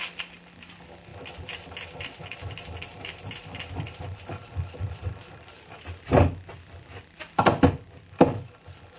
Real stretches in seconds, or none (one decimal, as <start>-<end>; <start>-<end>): 1.1-2.0; 5.0-7.0